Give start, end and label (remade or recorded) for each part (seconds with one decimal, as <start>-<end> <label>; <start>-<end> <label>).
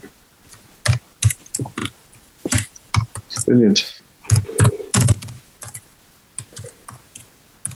0.0-1.8 recorded; 1.8-3.2 remade; 3.2-7.7 recorded